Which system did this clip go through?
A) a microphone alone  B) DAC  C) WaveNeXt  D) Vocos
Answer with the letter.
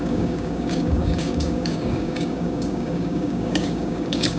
B